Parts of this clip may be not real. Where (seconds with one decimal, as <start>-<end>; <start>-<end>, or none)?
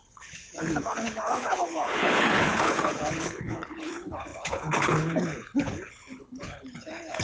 0.0-7.2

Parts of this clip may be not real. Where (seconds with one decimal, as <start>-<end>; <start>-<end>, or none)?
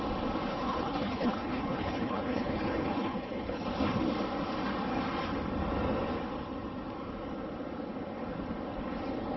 0.5-3.6